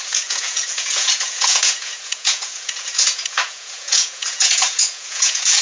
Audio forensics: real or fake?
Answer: fake